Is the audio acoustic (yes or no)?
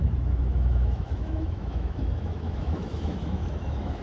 no